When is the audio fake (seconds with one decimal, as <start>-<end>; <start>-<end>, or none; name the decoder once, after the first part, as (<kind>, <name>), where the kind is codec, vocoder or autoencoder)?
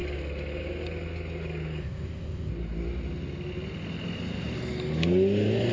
1.8-2.5 (codec, ZipCodec)